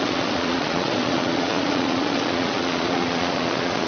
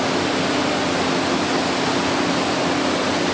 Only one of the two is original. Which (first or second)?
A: second